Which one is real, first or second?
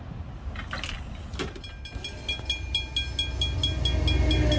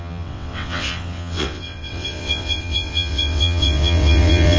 first